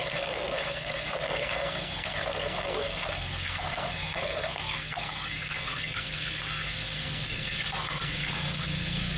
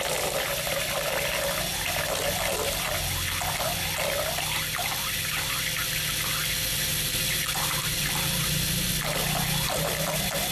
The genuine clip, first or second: second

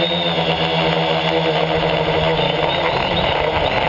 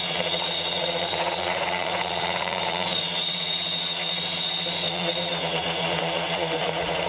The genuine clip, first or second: first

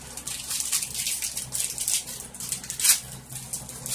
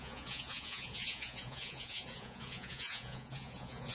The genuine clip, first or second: first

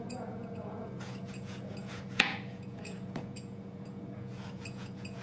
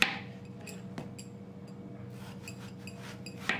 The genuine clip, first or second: second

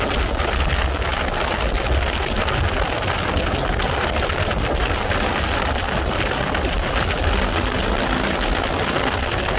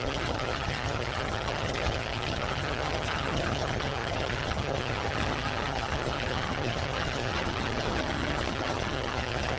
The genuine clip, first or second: first